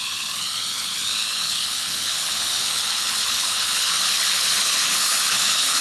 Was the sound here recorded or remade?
remade